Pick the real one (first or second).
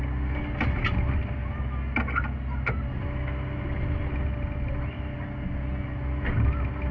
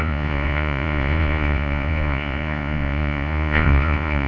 first